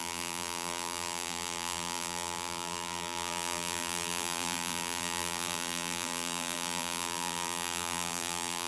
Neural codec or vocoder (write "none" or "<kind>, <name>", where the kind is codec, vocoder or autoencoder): vocoder, BigVGAN v2